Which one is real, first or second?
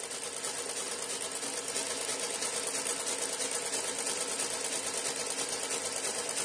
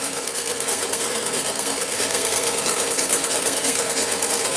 first